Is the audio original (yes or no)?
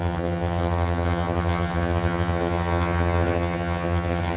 no